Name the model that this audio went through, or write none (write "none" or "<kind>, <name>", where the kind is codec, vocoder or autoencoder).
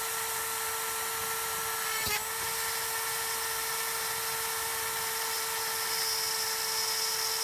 none